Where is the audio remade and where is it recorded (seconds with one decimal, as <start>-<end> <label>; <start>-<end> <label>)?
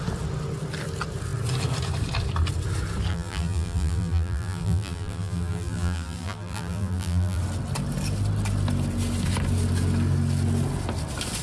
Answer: 0.0-3.1 recorded; 3.1-7.4 remade; 7.4-11.4 recorded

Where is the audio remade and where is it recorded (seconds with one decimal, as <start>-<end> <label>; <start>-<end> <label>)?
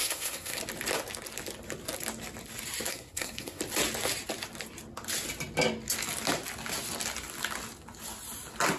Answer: 0.0-0.6 remade; 0.6-2.9 recorded; 2.9-3.6 remade; 3.6-8.8 recorded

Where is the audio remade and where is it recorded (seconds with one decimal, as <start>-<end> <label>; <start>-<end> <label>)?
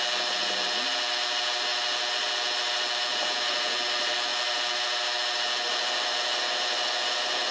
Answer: 0.0-7.5 recorded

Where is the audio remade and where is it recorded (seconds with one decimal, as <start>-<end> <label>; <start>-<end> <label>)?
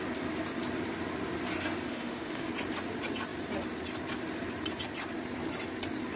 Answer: 0.0-1.9 recorded; 1.9-2.5 remade; 2.5-6.2 recorded